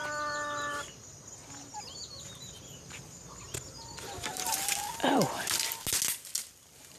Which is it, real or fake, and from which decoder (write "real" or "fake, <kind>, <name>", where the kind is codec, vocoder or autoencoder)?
real